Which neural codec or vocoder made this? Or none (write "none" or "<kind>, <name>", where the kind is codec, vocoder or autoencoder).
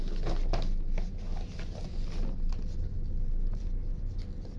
none